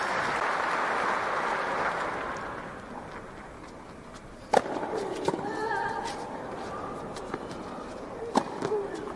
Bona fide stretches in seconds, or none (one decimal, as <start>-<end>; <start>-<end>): 0.0-9.2